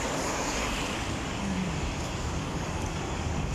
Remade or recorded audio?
remade